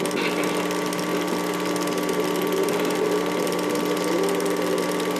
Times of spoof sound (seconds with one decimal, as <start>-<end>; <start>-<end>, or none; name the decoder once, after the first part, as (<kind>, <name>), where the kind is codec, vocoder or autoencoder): none